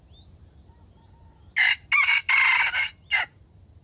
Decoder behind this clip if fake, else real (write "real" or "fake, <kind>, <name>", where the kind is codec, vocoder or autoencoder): real